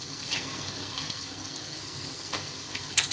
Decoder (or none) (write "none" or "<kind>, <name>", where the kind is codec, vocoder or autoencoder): codec, SNAC